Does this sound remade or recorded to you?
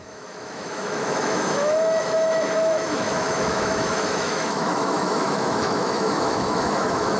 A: remade